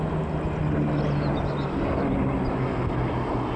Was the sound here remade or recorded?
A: recorded